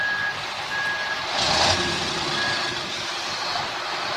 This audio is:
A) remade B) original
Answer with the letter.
B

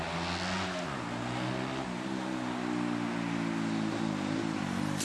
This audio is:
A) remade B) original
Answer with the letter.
B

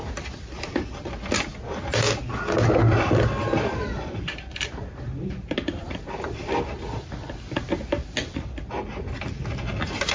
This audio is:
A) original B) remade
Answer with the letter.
A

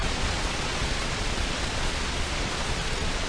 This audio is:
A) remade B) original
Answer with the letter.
A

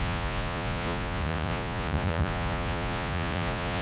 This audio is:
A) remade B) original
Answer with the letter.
A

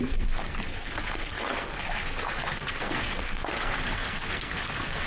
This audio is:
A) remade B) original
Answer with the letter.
A